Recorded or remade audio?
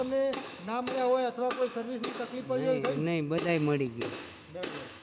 remade